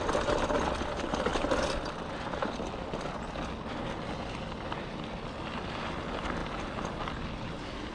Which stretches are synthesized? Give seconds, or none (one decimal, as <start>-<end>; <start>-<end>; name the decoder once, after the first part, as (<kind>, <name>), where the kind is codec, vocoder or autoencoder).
none